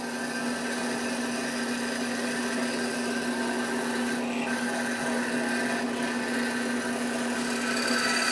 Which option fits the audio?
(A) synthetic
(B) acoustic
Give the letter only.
B